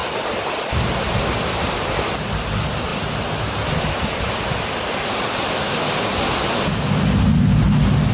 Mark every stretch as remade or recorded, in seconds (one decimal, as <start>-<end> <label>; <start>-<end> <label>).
0.0-0.9 remade; 0.9-8.1 recorded